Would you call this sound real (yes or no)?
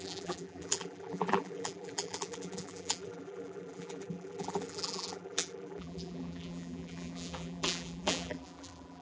no